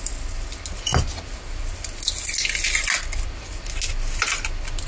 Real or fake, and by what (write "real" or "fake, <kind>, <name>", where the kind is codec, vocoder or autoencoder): real